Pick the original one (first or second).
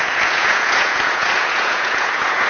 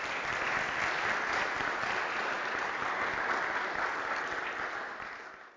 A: second